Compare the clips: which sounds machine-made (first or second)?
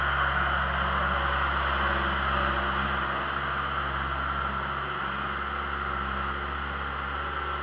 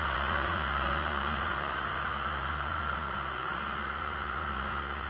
second